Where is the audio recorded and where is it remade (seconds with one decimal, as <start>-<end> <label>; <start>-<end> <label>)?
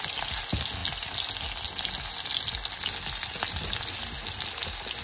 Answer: 0.0-5.0 recorded